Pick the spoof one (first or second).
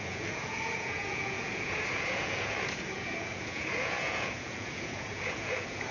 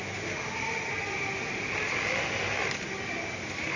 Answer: first